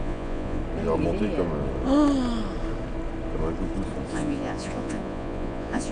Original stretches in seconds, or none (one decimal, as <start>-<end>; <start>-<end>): 0.6-4.1